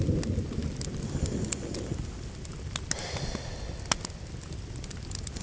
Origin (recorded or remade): recorded